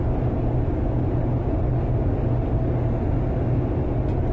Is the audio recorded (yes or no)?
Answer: yes